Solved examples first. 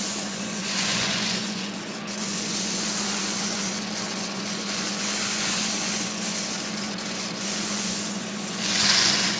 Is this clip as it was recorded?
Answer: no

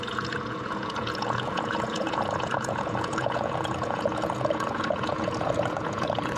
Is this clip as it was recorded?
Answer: no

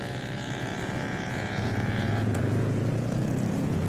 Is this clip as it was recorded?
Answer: no